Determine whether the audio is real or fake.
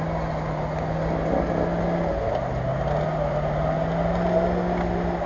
real